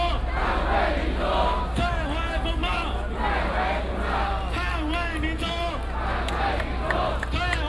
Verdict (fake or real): real